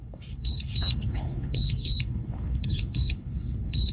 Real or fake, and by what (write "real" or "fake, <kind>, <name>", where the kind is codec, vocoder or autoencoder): fake, codec, HILCodec